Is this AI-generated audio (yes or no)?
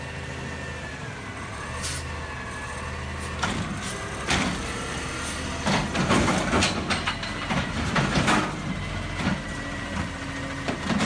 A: no